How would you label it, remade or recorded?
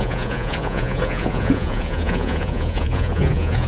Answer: remade